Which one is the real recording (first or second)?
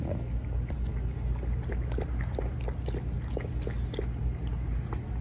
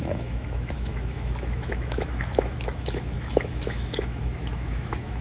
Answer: first